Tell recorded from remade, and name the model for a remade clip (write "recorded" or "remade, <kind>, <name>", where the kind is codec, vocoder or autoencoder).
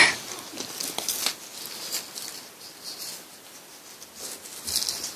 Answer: recorded